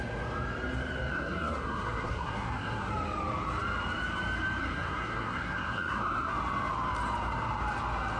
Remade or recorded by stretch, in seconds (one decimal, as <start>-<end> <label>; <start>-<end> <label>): 0.0-1.1 recorded; 1.1-2.9 remade; 2.9-4.6 recorded; 4.6-6.3 remade; 6.3-8.2 recorded